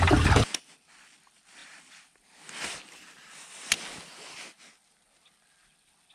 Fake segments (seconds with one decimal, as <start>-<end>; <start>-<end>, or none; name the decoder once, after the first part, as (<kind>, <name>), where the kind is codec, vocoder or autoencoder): 1.6-2.8 (vocoder, BigVGAN v2)